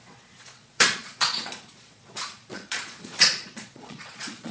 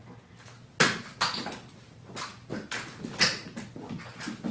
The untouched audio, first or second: second